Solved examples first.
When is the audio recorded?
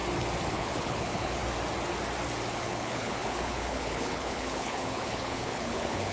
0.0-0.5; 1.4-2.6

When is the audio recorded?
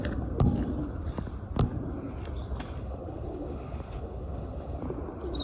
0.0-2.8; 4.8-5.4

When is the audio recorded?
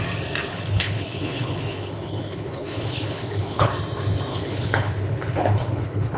0.0-0.5; 3.7-4.3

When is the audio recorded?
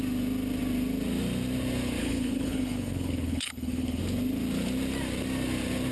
0.0-2.0; 4.0-5.9